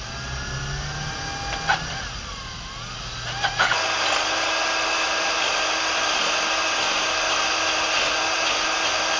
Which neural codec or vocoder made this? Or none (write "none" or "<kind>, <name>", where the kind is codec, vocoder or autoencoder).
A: none